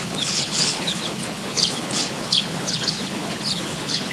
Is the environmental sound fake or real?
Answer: fake